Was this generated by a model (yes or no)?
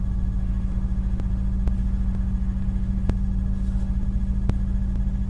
no